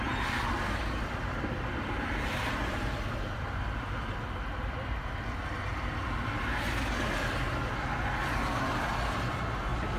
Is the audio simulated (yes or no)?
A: no